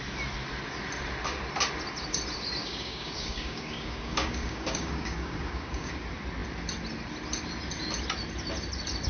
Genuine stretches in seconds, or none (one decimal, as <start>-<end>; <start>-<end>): 0.0-2.6; 5.9-9.1